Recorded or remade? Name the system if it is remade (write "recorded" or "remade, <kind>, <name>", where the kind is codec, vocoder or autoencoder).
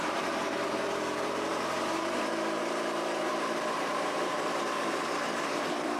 remade, vocoder, BigVGAN v2